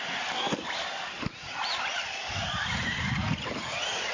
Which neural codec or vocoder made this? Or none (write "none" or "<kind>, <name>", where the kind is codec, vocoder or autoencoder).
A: none